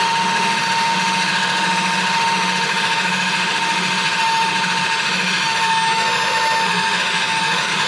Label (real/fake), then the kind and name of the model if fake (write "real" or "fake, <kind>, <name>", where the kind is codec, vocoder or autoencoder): fake, autoencoder, DAC-VAE